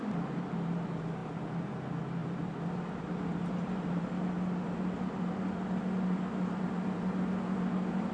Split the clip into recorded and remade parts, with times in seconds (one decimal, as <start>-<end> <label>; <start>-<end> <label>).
0.0-1.2 recorded; 1.2-1.7 remade; 1.7-2.2 recorded; 2.2-4.0 remade; 4.0-8.1 recorded